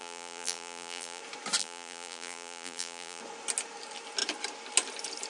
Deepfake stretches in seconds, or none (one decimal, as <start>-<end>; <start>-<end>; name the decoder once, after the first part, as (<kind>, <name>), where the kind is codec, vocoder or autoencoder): 0.0-1.2 (vocoder, BigVGAN v2); 1.6-3.2